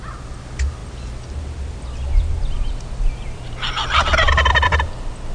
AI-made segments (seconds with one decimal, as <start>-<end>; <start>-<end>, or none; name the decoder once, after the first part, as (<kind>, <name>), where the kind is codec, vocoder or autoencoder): none